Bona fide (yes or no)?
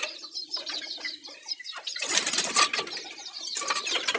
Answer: no